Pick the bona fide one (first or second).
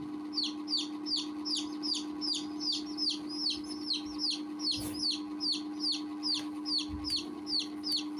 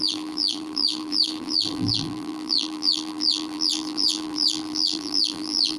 first